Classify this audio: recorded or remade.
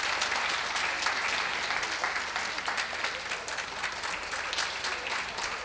recorded